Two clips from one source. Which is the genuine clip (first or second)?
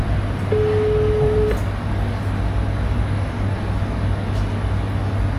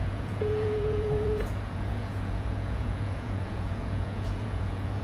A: first